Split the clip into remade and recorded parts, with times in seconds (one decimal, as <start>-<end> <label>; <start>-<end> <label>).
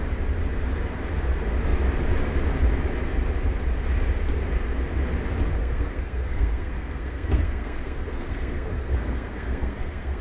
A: 0.0-5.6 recorded; 5.6-10.2 remade